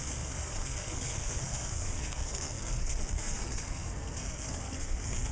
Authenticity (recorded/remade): remade